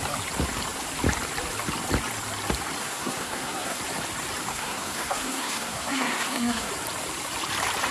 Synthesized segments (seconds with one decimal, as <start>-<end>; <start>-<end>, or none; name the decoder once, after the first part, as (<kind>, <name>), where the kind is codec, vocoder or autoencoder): 2.8-3.8 (codec, SNAC); 4.5-6.7